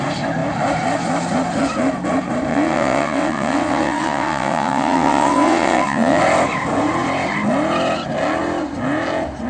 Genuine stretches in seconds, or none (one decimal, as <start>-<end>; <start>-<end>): 0.0-2.5; 6.2-9.5